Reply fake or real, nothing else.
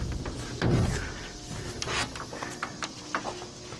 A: real